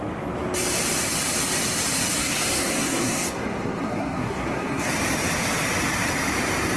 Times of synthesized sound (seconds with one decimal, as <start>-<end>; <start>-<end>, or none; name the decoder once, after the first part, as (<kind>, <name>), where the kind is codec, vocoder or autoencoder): 2.2-4.9 (codec, SNAC)